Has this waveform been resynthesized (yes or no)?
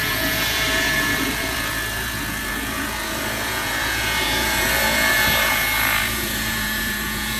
yes